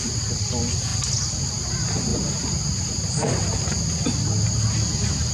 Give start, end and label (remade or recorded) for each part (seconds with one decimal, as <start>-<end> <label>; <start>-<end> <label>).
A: 0.0-5.3 recorded